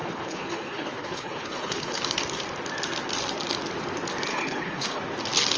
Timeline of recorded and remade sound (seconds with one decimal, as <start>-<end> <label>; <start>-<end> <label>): 0.0-2.0 remade; 2.0-4.3 recorded; 4.3-5.0 remade; 5.0-5.6 recorded